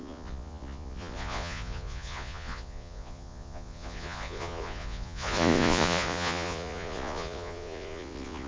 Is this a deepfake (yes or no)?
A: yes